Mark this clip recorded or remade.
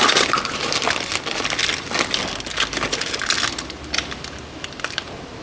recorded